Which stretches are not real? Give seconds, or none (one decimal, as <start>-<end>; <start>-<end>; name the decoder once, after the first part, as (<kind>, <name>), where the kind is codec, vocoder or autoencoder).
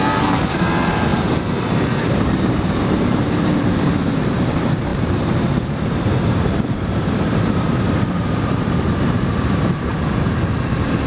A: 0.0-9.9 (vocoder, BigVGAN v2)